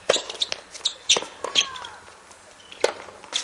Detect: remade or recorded recorded